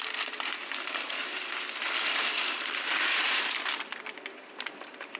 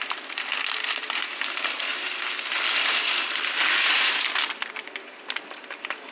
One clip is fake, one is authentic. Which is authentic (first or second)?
second